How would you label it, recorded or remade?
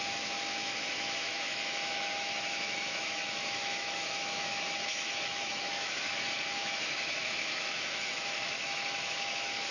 remade